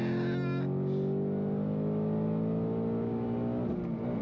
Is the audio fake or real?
real